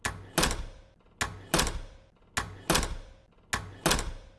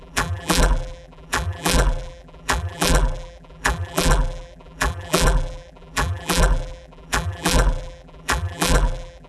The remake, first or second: second